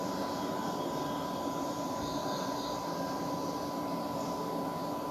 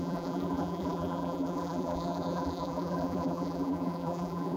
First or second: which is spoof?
second